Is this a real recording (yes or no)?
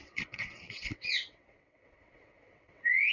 no